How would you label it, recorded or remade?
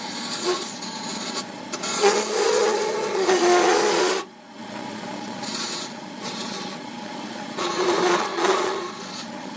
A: remade